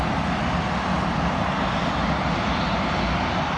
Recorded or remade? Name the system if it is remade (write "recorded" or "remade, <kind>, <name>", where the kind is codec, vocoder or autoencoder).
recorded